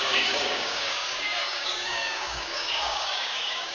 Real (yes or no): no